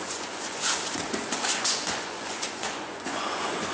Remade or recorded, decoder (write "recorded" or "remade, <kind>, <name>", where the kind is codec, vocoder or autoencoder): remade, vocoder, Vocos